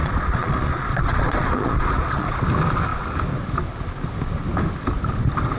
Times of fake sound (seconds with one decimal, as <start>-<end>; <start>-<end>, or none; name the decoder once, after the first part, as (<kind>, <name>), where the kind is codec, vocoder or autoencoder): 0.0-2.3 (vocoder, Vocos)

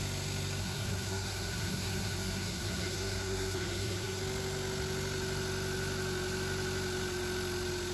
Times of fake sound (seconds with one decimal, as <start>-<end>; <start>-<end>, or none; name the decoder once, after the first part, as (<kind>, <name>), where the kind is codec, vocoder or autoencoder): 0.6-4.2 (codec, SNAC)

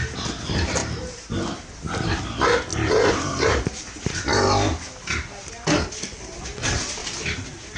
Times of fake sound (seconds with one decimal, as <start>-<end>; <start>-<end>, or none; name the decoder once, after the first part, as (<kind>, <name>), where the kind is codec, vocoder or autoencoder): 0.8-1.3 (vocoder, BigVGAN v2); 2.7-4.2; 7.0-7.8

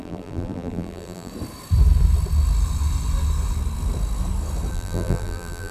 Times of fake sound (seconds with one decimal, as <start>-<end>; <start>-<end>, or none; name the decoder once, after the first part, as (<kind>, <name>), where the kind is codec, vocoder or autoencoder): 0.0-1.3 (vocoder, BigVGAN v2); 4.7-5.7